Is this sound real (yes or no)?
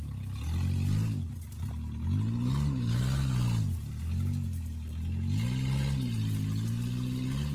yes